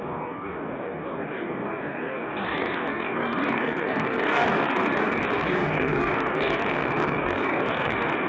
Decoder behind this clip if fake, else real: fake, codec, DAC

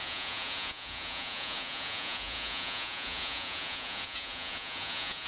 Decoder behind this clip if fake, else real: fake, vocoder, Vocos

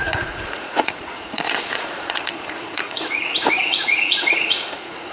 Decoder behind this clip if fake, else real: fake, vocoder, Vocos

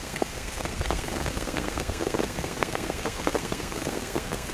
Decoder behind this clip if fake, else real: fake, codec, SNAC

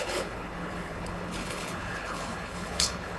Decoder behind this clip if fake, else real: fake, codec, HILCodec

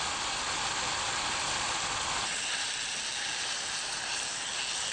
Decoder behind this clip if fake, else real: real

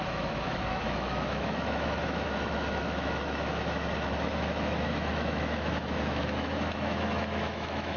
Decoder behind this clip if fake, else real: fake, autoencoder, DAC-VAE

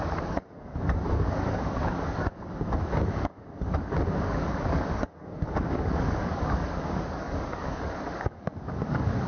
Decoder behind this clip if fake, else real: fake, codec, DAC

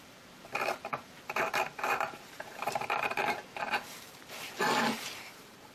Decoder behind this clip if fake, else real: fake, vocoder, BigVGAN v2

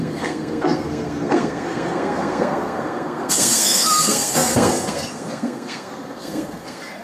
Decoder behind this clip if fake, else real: fake, codec, SNAC